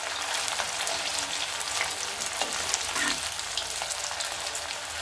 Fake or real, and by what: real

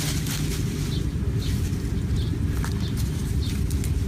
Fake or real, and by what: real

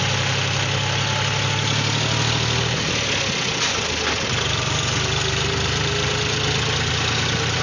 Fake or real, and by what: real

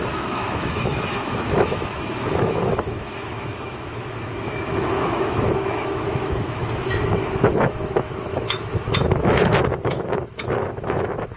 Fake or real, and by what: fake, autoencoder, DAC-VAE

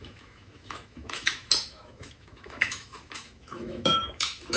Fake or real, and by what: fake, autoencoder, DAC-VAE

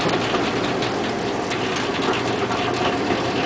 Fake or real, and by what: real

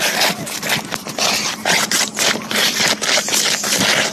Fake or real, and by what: real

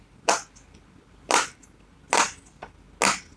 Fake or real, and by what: real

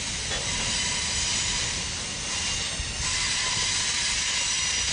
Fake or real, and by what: real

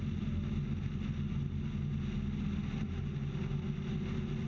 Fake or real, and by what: real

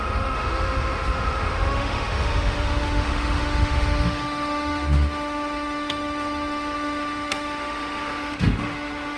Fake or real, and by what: fake, autoencoder, DAC-VAE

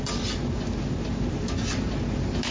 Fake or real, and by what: real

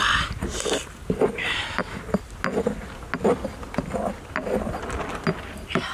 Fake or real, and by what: real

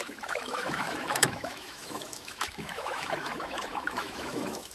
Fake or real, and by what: fake, autoencoder, DAC-VAE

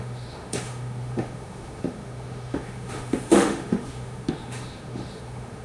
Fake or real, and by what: fake, autoencoder, DAC-VAE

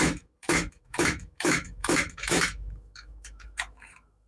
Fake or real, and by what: fake, autoencoder, DAC-VAE